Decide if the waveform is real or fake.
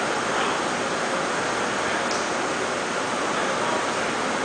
real